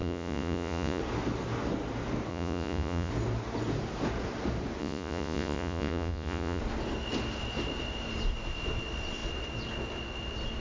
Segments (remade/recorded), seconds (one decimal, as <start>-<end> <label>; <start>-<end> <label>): 0.0-1.0 remade; 1.0-2.3 recorded; 2.3-3.1 remade; 3.1-4.8 recorded; 4.8-6.6 remade; 6.6-10.6 recorded